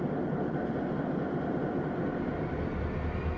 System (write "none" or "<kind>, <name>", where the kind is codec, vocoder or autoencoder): none